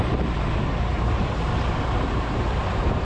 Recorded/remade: remade